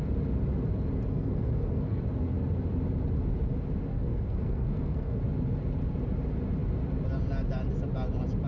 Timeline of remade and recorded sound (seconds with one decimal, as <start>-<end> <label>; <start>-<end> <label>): 0.0-1.1 recorded; 1.1-2.0 remade; 2.0-3.9 recorded; 3.9-5.2 remade; 5.2-8.5 recorded